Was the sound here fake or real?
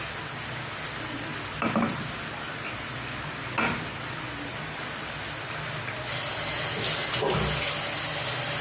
real